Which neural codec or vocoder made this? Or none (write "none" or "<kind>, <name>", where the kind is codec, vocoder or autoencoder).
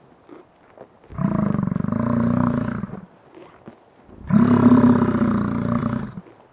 none